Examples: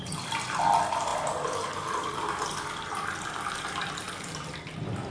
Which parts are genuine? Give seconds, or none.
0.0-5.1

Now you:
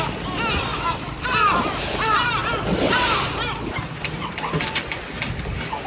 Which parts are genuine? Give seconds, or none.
0.0-0.7; 1.8-5.9

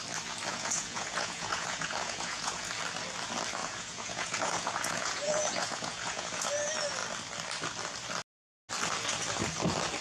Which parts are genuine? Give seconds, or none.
0.0-0.5; 2.7-3.6; 6.5-10.0